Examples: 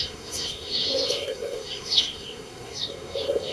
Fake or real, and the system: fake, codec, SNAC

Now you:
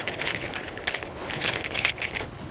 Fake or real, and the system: fake, codec, HILCodec